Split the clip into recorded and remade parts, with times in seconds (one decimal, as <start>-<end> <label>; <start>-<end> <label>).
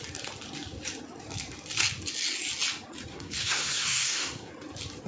0.0-3.1 recorded; 3.1-4.5 remade; 4.5-5.1 recorded